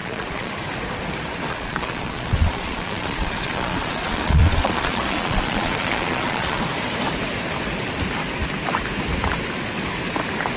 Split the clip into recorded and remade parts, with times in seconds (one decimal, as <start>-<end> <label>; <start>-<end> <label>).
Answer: 0.0-0.5 remade; 0.5-1.5 recorded; 1.5-6.6 remade; 6.6-10.6 recorded